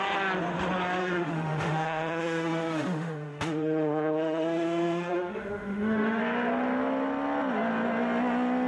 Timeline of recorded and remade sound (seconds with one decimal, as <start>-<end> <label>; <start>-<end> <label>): 0.0-1.0 recorded; 1.0-6.2 remade; 6.2-8.7 recorded